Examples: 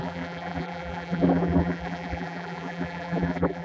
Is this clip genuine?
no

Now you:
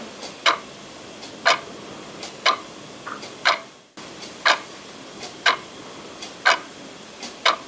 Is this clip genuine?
yes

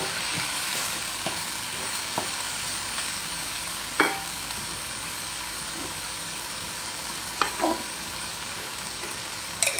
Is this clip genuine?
no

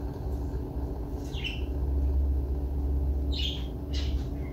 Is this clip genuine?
yes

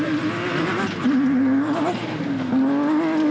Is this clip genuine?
yes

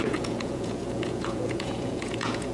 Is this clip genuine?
no